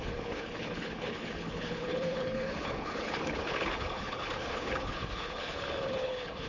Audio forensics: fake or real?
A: fake